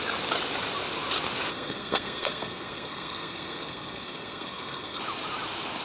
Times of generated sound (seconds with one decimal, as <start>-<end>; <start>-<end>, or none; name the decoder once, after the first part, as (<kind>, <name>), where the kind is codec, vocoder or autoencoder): 1.5-5.0 (codec, SNAC)